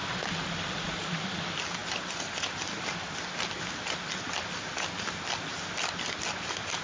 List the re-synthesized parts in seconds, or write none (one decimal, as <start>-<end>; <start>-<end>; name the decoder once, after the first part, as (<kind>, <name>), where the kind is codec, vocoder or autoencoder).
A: none